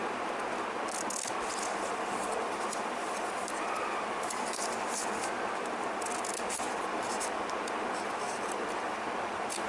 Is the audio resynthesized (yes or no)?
no